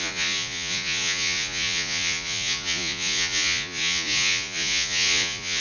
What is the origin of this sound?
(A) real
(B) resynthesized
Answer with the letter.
B